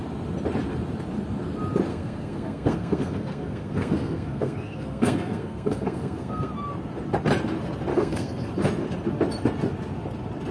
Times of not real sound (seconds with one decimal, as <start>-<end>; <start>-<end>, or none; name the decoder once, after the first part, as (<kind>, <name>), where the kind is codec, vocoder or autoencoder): 1.9-6.5 (codec, SNAC); 7.9-8.5